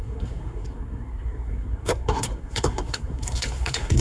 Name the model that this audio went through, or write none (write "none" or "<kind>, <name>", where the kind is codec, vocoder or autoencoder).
codec, SNAC